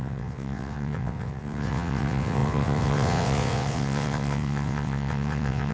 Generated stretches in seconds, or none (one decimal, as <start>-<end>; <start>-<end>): 0.0-5.7